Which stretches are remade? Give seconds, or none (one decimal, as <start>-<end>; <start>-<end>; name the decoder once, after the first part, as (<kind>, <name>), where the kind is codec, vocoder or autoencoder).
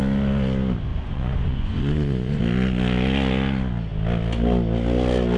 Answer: 0.9-2.4 (vocoder, Vocos)